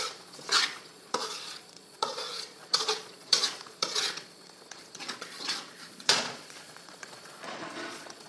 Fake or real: fake